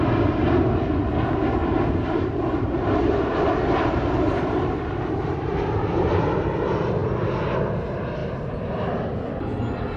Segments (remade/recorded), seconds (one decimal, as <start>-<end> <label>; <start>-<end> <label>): 0.0-1.6 recorded; 1.6-6.1 remade; 6.1-10.0 recorded